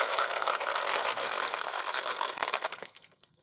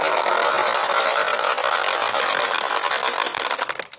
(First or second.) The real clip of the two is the second